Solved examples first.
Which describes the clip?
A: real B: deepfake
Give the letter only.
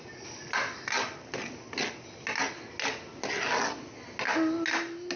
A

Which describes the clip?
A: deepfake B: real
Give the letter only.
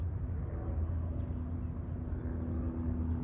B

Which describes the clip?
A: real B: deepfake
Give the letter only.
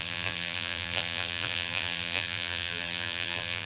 B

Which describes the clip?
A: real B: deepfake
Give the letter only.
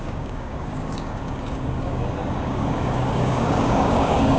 B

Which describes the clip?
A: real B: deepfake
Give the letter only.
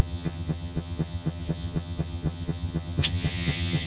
B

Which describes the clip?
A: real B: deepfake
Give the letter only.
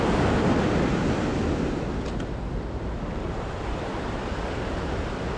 A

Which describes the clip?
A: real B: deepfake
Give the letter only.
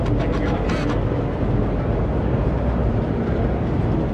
A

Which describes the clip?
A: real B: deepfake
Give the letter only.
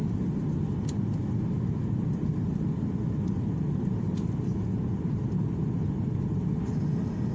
A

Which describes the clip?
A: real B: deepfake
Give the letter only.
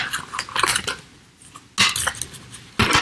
A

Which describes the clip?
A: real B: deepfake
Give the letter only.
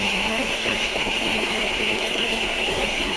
B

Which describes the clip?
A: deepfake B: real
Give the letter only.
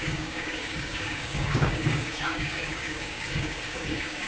A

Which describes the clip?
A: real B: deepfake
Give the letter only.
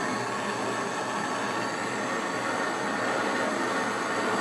A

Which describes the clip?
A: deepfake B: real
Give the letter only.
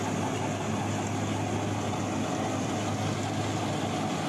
B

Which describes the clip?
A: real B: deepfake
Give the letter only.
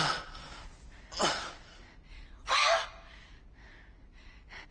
A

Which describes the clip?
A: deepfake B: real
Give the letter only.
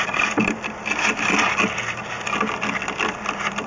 B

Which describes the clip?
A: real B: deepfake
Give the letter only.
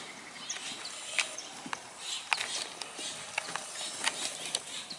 A